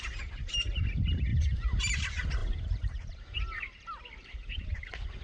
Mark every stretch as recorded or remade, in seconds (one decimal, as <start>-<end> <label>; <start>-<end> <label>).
0.0-1.3 recorded; 1.3-2.0 remade; 2.0-2.4 recorded; 2.4-3.1 remade; 3.1-4.2 recorded; 4.2-4.8 remade; 4.8-5.2 recorded